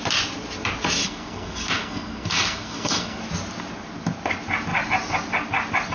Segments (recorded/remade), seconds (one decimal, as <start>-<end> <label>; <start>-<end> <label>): 0.0-1.0 recorded; 1.0-3.2 remade; 3.2-5.9 recorded

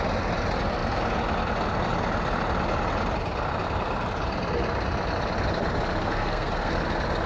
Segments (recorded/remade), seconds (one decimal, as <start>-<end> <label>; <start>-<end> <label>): 0.0-6.0 recorded; 6.0-6.7 remade; 6.7-7.3 recorded

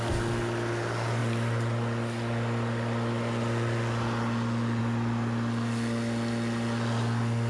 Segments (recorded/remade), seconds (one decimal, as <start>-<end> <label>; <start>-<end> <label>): 0.0-7.5 recorded